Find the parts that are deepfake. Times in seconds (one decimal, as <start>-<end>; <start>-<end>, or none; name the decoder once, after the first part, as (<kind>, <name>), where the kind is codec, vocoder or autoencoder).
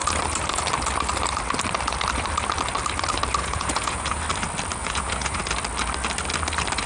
3.4-4.2 (vocoder, Vocos); 4.8-5.4